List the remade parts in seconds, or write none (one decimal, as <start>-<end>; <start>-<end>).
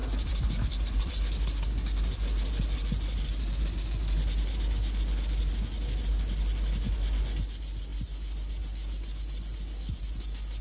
0.0-1.1